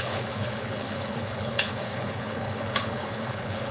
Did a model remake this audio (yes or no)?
yes